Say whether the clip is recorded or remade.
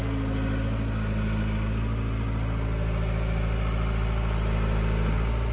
recorded